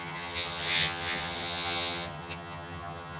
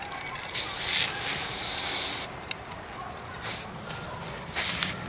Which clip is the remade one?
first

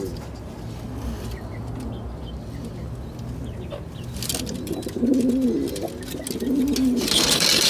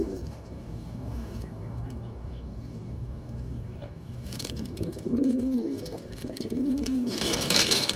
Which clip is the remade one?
second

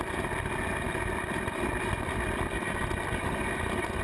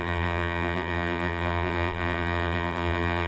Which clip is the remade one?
second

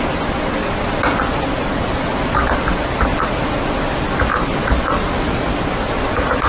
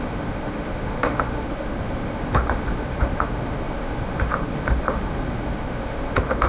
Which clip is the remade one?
second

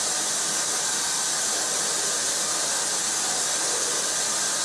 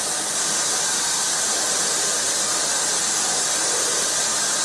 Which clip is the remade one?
second